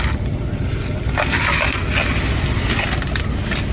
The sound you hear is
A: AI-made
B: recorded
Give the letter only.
B